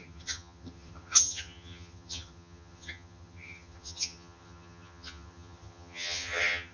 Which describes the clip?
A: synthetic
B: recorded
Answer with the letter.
A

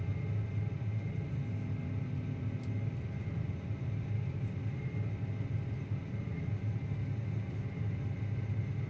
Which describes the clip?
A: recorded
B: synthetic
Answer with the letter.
A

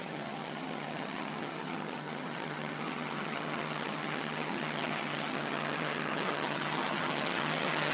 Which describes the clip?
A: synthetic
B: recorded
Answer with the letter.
A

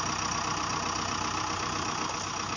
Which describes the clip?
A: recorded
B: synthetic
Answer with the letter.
A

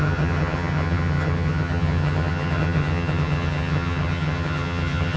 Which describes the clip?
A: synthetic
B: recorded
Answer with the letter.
A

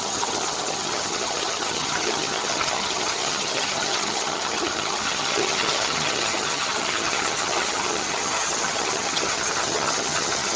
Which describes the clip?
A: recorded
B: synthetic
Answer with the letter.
B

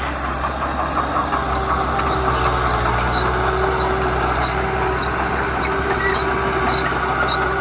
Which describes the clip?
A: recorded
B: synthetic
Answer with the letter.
A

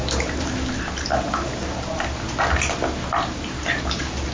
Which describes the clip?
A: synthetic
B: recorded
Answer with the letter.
B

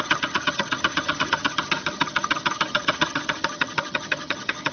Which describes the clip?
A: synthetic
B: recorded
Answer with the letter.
A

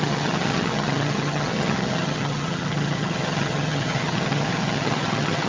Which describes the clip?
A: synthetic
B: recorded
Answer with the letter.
A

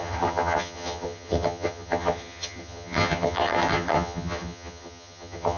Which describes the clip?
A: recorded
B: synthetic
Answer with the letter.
B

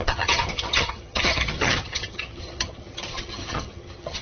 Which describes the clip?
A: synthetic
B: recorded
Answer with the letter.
A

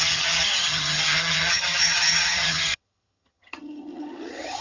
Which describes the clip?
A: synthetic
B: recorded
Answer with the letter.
A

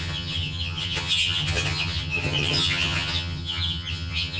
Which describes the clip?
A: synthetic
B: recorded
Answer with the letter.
A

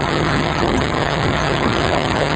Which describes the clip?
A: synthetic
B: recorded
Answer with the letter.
A